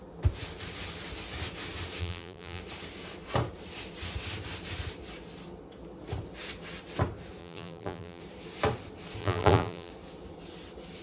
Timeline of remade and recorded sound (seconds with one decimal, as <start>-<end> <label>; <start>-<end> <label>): 0.0-2.0 recorded; 2.0-2.6 remade; 2.6-7.4 recorded; 7.4-8.2 remade; 8.2-9.2 recorded; 9.2-9.9 remade; 9.9-11.0 recorded